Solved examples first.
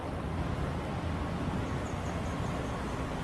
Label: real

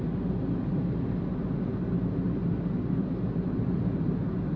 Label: real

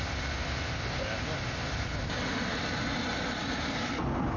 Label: real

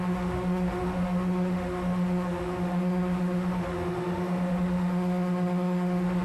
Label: fake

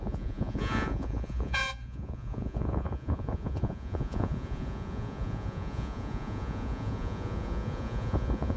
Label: fake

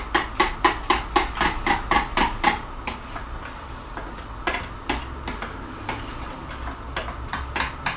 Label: real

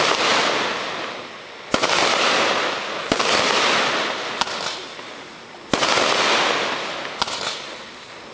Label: real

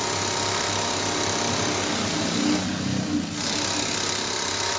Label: real